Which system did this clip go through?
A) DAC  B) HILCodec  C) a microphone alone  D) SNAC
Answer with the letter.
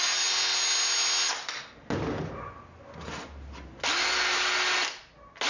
C